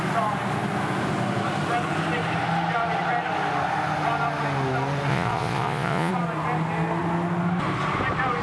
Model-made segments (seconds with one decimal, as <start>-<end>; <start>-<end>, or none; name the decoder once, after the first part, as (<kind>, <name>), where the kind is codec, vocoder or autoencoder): 5.1-6.1 (vocoder, Vocos)